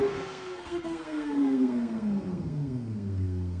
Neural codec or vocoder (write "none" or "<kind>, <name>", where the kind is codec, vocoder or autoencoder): codec, SNAC